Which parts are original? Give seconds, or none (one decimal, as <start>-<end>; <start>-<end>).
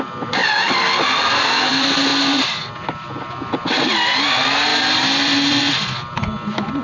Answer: 0.0-6.8